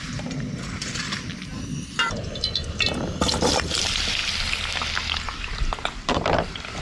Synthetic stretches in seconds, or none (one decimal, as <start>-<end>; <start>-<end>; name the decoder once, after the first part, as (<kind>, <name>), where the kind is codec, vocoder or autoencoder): 0.0-4.2 (vocoder, BigVGAN v2); 5.9-6.8